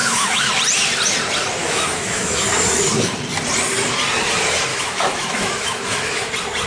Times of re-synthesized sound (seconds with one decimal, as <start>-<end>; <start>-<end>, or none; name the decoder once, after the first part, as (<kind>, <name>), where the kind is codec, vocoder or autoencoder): 0.0-0.5 (autoencoder, DAC-VAE); 1.6-2.4; 4.7-6.3